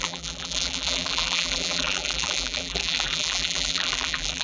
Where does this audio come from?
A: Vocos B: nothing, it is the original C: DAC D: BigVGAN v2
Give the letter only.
D